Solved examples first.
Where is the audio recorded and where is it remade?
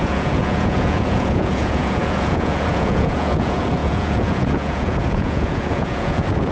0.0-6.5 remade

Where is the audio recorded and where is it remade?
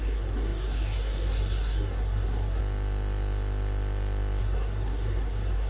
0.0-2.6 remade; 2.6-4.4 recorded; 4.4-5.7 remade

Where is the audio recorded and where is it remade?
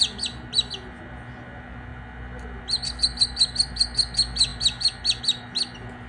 0.0-6.1 recorded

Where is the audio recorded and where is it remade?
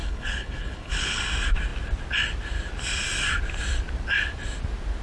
0.0-1.2 remade; 1.2-5.0 recorded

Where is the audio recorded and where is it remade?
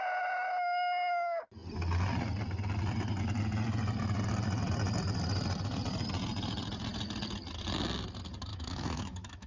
0.0-8.5 recorded; 8.5-9.5 remade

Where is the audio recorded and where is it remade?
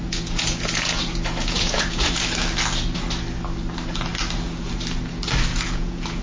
0.0-2.2 remade; 2.2-5.5 recorded; 5.5-6.2 remade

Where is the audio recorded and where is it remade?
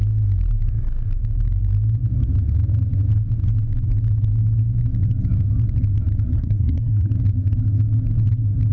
0.0-6.4 recorded; 6.4-7.1 remade; 7.1-8.7 recorded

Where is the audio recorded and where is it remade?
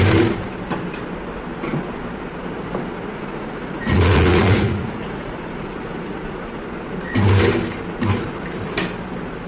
0.0-3.1 recorded; 3.1-6.6 remade; 6.6-9.5 recorded